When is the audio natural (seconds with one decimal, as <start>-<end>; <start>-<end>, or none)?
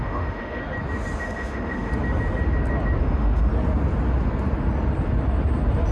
0.6-1.2; 1.9-3.0; 3.5-5.9